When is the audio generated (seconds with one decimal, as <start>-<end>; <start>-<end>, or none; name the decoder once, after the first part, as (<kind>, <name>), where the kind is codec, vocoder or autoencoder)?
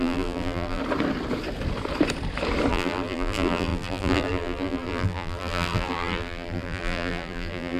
0.0-0.8 (vocoder, BigVGAN v2); 2.7-7.8